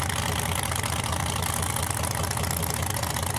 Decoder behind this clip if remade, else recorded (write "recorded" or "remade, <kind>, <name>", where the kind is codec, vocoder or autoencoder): recorded